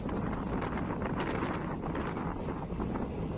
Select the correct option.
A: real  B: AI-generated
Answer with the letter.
A